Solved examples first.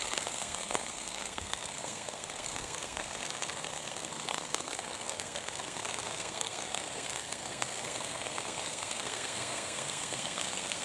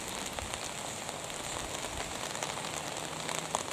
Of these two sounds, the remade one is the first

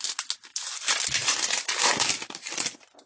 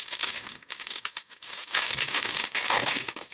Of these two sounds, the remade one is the second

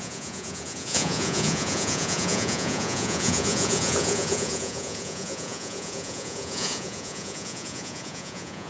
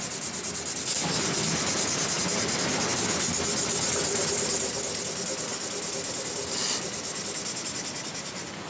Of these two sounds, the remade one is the first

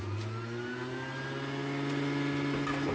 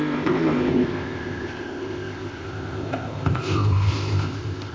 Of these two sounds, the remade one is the second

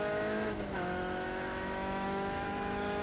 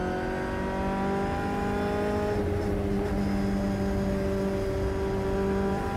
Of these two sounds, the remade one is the first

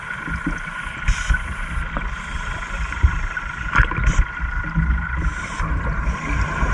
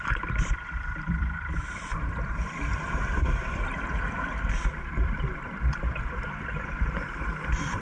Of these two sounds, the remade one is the second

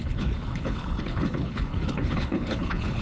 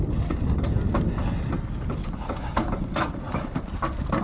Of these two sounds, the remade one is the first